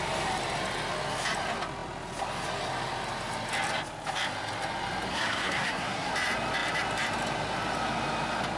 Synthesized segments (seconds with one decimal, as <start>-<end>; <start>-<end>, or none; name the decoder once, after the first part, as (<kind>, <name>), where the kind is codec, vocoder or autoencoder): 5.1-6.1 (codec, SNAC)